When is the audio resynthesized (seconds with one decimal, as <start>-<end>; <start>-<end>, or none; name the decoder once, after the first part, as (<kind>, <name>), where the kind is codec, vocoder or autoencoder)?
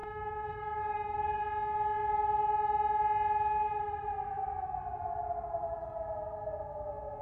0.0-1.4 (codec, DAC)